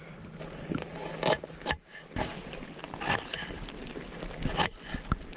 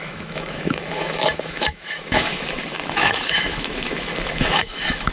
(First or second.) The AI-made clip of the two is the second